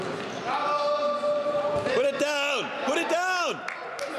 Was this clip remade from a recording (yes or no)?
no